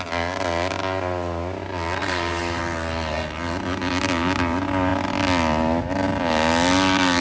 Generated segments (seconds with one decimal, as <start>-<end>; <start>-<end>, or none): 2.0-2.6